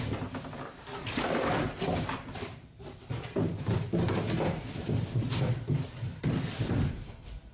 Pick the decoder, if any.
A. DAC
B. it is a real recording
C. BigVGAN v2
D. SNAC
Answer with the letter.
C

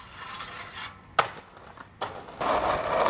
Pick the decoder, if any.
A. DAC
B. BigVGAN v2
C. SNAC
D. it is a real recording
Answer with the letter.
D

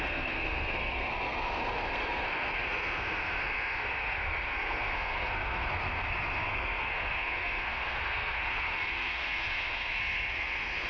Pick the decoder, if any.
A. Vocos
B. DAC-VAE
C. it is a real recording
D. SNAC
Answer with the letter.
D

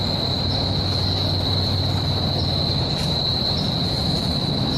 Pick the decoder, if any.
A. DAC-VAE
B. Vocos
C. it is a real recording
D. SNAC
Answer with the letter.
C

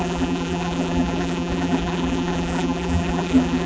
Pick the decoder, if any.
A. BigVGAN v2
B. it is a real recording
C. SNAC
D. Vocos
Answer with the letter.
A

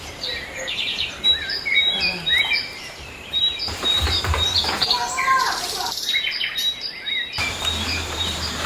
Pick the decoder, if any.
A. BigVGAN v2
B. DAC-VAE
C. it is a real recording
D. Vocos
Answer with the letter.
A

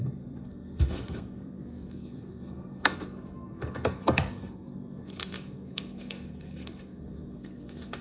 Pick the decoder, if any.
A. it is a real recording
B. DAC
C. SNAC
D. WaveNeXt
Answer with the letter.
C